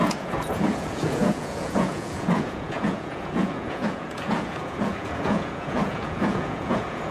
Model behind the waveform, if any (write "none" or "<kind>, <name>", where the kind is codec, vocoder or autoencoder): vocoder, Vocos